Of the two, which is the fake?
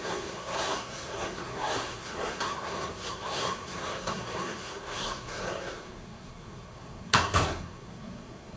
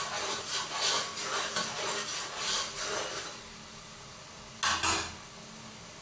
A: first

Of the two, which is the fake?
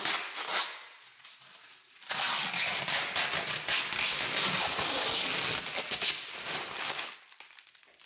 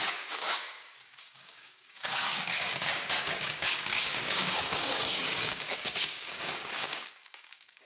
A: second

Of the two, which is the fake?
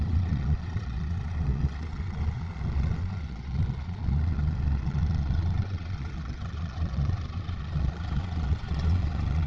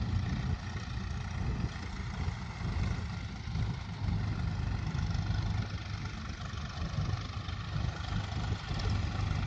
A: first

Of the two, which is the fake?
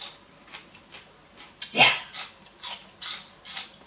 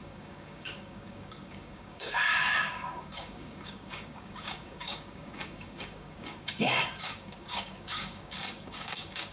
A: second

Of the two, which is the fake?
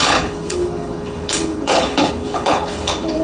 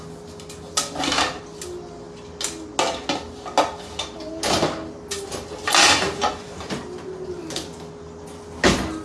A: first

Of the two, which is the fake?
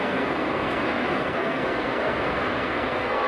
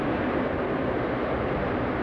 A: first